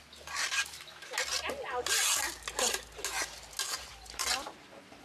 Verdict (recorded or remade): recorded